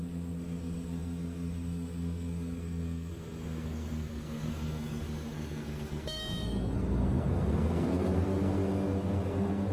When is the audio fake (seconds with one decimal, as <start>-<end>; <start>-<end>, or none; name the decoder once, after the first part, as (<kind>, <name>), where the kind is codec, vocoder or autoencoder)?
0.0-9.7 (codec, SNAC)